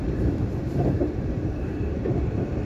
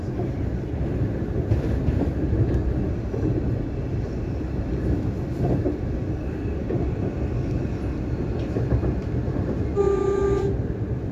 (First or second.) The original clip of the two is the second